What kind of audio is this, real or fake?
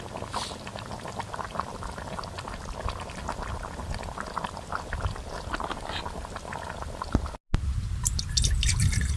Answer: real